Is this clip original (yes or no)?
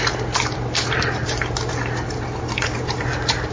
no